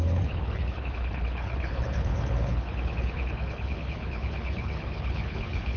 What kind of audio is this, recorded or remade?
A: remade